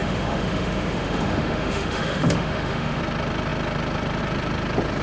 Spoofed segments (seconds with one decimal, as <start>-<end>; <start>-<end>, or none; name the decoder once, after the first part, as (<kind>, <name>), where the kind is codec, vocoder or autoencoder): 0.0-3.0 (autoencoder, DAC-VAE)